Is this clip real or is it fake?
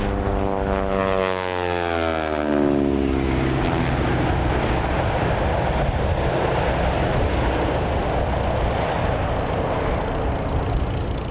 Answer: real